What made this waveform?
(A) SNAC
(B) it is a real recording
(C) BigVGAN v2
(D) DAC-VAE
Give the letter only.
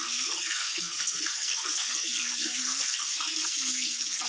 A